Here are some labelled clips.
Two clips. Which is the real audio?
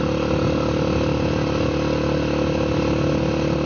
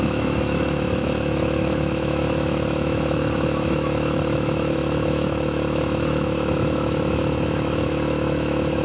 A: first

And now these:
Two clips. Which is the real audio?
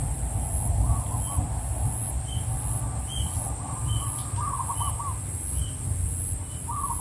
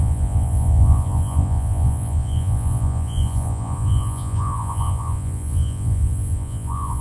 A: first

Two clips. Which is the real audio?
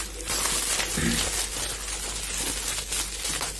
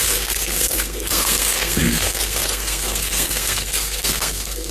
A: first